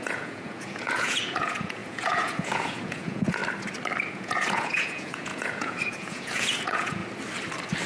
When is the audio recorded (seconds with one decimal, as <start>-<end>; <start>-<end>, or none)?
3.4-4.1; 7.0-7.9